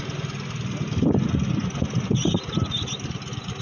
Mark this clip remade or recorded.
recorded